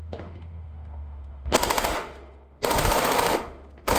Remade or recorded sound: remade